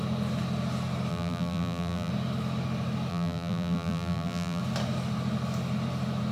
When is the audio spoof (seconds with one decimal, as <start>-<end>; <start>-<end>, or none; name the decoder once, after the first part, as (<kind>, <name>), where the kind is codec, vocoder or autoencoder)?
1.1-2.1 (vocoder, BigVGAN v2); 3.1-4.6